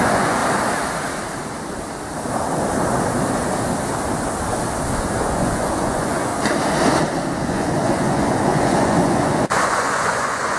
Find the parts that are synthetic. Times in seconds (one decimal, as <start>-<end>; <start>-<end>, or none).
0.0-0.4; 5.2-6.3; 7.4-10.6

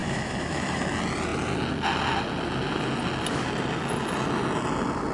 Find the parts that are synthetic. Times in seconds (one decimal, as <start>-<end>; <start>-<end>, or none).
0.0-0.8

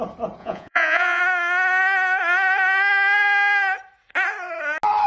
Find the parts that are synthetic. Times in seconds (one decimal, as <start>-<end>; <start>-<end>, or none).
0.4-1.2

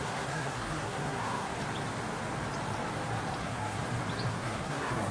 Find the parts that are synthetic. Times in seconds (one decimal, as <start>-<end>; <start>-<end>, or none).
0.0-1.5; 3.4-3.8; 4.3-5.1

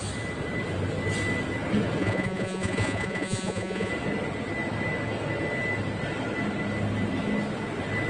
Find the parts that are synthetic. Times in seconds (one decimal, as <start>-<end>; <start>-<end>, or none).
2.0-3.9